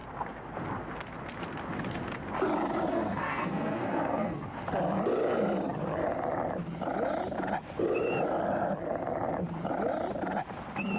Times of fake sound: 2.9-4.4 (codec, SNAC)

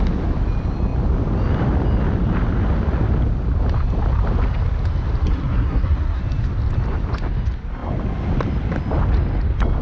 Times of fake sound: 5.2-6.2 (codec, SNAC)

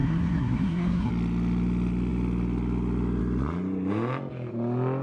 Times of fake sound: 0.0-1.1 (codec, SNAC)

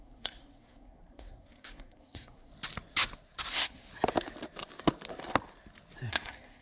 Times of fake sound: 0.0-2.5 (codec, SNAC); 3.5-3.9; 6.1-6.6